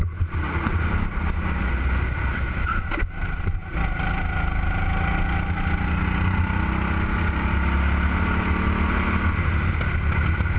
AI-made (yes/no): no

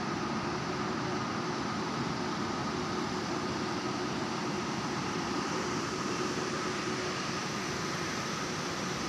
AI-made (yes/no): yes